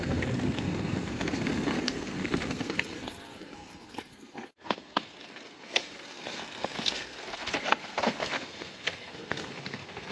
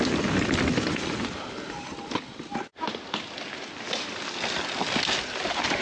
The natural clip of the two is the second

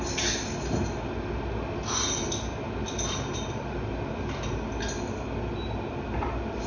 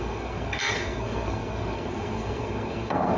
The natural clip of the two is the first